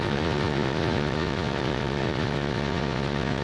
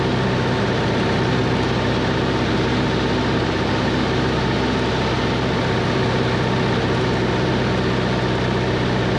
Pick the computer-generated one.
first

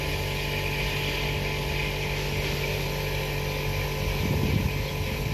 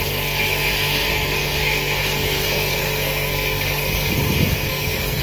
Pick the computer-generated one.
second